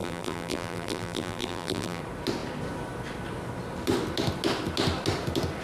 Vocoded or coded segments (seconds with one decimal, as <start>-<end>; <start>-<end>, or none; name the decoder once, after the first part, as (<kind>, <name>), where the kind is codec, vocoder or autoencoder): 0.0-2.0 (vocoder, BigVGAN v2)